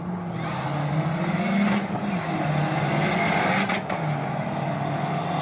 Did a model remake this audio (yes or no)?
no